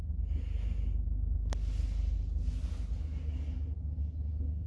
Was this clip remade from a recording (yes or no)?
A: no